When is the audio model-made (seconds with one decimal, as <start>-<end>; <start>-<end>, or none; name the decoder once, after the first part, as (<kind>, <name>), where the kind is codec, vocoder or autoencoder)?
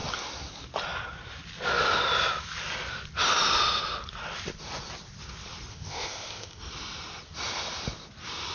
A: 5.7-6.6 (codec, ZipCodec)